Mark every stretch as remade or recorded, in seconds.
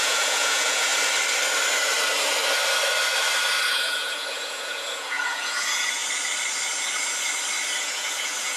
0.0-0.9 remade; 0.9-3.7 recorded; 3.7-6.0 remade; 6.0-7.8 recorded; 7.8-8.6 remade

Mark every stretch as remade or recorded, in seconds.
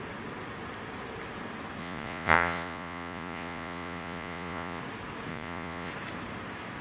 0.0-1.8 recorded; 1.8-4.8 remade; 4.8-5.3 recorded; 5.3-5.9 remade; 5.9-6.8 recorded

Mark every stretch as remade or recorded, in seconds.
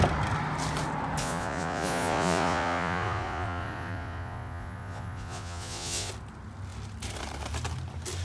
0.0-1.2 recorded; 1.2-6.1 remade; 6.1-8.2 recorded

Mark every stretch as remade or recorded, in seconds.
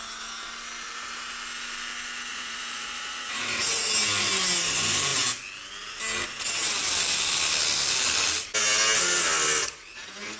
0.0-2.3 recorded; 2.3-3.9 remade; 3.9-9.6 recorded; 9.6-10.4 remade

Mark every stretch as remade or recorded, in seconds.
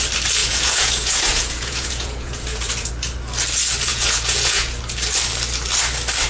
0.0-0.4 recorded; 0.4-2.9 remade; 2.9-3.9 recorded; 3.9-4.8 remade; 4.8-6.3 recorded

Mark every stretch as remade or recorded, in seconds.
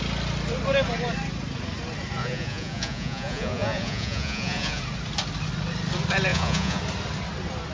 0.0-2.2 recorded; 2.2-4.8 remade; 4.8-6.3 recorded; 6.3-6.8 remade; 6.8-7.7 recorded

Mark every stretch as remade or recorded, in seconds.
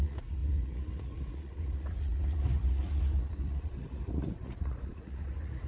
0.0-5.7 remade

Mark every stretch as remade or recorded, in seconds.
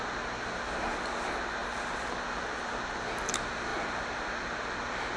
0.0-5.2 recorded